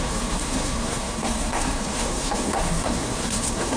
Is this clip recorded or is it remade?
remade